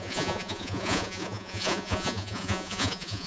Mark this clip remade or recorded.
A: remade